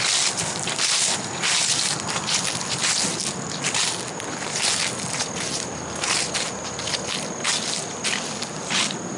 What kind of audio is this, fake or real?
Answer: real